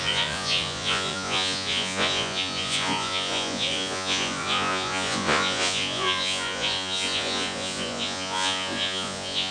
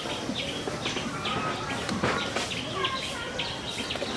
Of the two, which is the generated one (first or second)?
first